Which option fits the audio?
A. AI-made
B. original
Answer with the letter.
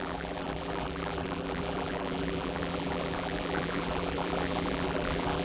A